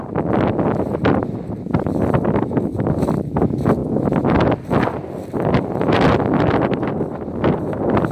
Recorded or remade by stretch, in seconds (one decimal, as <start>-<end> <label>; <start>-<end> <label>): 0.0-8.1 recorded